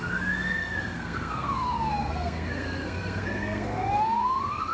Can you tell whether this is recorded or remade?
remade